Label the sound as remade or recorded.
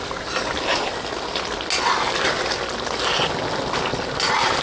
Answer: recorded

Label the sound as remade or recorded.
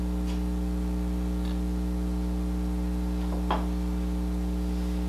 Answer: recorded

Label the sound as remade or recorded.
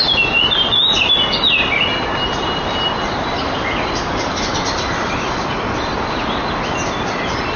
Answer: recorded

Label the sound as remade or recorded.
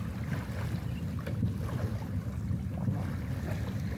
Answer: recorded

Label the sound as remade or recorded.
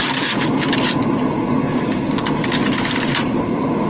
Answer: recorded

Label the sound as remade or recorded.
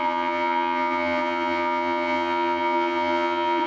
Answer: remade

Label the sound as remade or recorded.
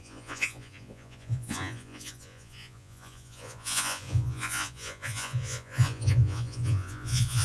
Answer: remade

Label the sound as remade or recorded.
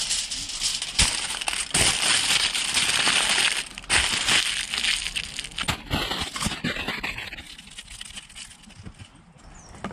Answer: recorded